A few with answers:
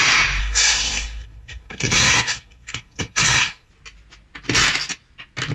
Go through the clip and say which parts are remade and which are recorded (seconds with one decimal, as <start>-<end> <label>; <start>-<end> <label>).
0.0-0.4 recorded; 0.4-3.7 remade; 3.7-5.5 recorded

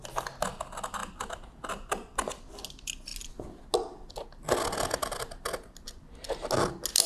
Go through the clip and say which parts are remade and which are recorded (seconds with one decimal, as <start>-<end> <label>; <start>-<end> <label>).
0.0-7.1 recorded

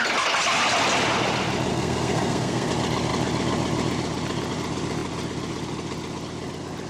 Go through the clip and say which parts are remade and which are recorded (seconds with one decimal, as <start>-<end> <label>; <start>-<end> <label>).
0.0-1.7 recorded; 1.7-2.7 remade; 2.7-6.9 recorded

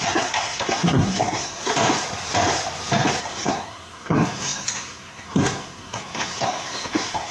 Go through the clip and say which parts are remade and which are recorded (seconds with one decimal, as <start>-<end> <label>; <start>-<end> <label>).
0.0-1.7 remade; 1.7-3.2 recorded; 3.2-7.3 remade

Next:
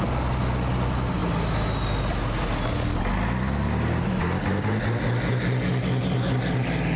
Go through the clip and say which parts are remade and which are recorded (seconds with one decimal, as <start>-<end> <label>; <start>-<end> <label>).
0.0-7.0 recorded

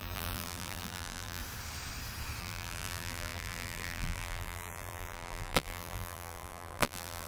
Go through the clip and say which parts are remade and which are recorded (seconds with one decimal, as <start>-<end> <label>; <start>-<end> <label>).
0.0-1.4 remade; 1.4-2.4 recorded; 2.4-7.3 remade

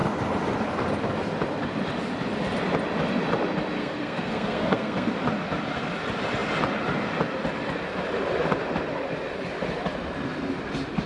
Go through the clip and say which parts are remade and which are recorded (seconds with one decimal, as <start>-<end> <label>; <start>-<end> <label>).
0.0-3.8 recorded; 3.8-5.1 remade; 5.1-11.1 recorded